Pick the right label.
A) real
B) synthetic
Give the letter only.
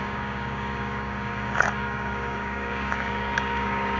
B